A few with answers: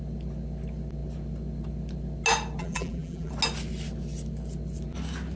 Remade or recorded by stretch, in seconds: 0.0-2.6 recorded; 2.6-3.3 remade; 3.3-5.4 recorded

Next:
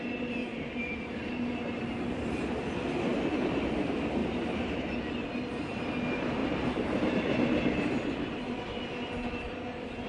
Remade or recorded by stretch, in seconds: 0.0-0.4 recorded; 0.4-1.2 remade; 1.2-3.1 recorded; 3.1-3.7 remade; 3.7-4.2 recorded; 4.2-5.1 remade; 5.1-6.4 recorded; 6.4-7.1 remade; 7.1-10.1 recorded

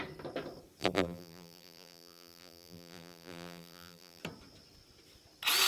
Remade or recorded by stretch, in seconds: 0.0-0.8 recorded; 0.8-4.2 remade; 4.2-5.7 recorded